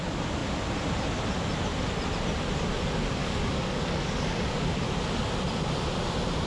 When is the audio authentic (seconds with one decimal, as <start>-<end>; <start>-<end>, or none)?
0.0-3.2; 4.7-6.5